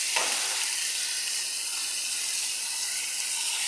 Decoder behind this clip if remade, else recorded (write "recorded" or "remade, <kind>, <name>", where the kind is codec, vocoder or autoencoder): recorded